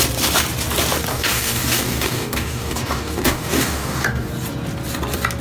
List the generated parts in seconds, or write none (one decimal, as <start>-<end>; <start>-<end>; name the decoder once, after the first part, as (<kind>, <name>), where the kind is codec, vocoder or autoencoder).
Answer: 1.1-4.3 (codec, DAC)